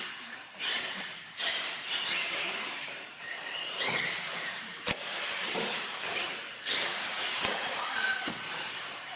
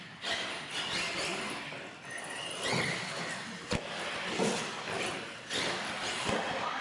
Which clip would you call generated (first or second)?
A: first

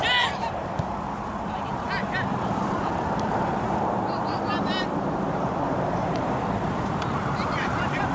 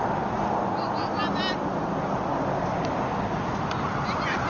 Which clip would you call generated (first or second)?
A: first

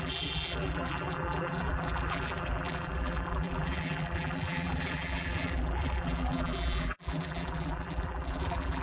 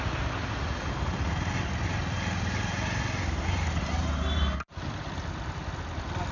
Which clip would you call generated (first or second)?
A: first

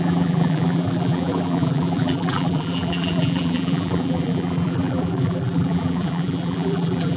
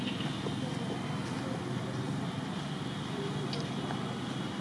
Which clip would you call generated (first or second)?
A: first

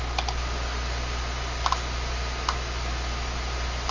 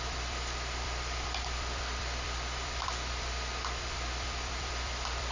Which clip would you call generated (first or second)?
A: second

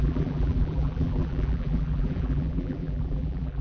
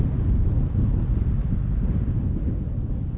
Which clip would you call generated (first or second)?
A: first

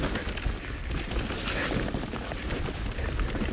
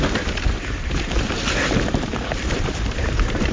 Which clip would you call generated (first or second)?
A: second